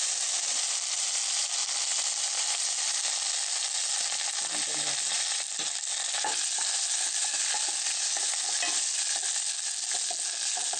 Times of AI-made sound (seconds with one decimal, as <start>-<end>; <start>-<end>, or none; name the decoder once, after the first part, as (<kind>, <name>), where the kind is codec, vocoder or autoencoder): none